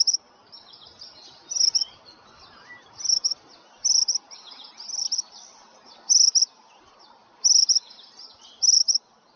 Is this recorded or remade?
recorded